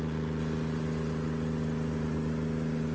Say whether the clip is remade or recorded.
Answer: recorded